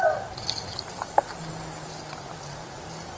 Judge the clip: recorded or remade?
recorded